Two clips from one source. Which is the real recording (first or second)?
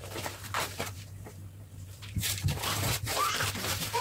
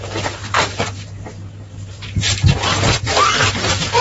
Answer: second